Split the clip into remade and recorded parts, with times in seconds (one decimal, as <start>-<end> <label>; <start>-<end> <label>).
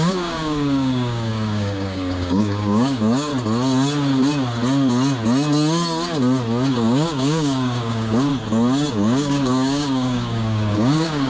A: 0.0-3.3 remade; 3.3-6.7 recorded; 6.7-8.3 remade; 8.3-8.9 recorded; 8.9-11.3 remade